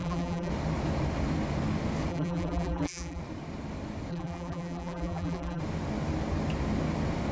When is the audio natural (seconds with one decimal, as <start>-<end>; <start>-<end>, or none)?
0.5-2.1; 3.2-4.1; 5.6-7.3